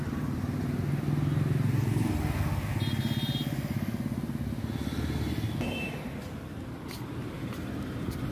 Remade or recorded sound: recorded